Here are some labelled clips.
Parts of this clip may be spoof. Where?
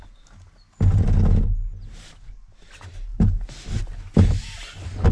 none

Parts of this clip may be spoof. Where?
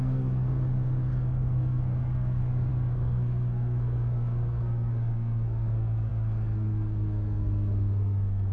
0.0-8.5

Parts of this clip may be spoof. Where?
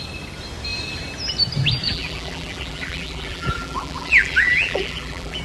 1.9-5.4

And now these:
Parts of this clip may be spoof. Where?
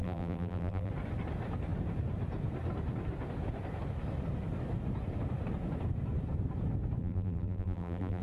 0.0-0.9; 7.0-8.2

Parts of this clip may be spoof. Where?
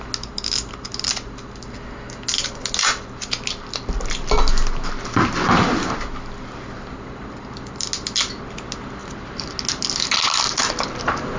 none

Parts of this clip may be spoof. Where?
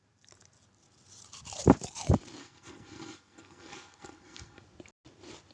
2.4-4.6